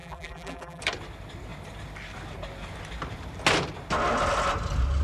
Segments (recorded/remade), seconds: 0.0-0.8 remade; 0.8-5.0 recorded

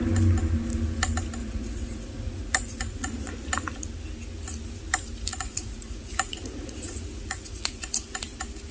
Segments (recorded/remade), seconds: 0.0-1.4 recorded; 1.4-3.3 remade; 3.3-5.3 recorded; 5.3-7.8 remade; 7.8-8.7 recorded